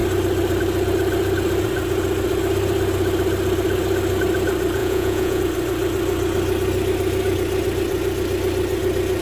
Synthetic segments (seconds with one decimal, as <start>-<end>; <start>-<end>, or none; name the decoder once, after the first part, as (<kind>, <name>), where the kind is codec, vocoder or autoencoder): 4.8-5.4 (vocoder, Vocos)